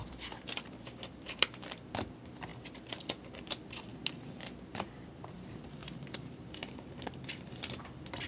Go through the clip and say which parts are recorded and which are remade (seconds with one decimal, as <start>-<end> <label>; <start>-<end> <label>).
0.0-3.9 remade; 3.9-4.7 recorded; 4.7-8.3 remade